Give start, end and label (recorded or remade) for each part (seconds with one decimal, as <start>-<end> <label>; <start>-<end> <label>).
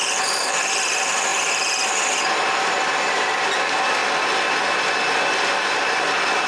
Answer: 0.0-4.0 remade; 4.0-5.6 recorded; 5.6-6.5 remade